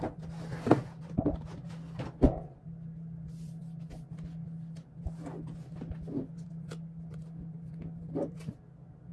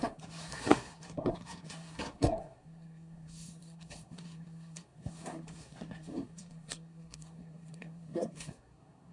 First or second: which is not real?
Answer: second